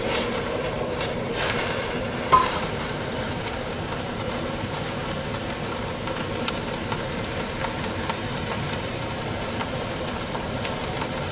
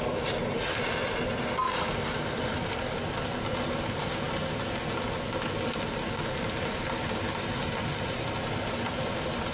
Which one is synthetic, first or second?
first